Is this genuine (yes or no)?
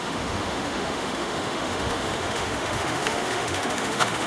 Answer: no